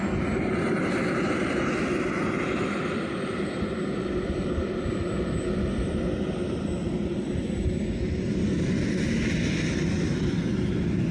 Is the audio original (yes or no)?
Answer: yes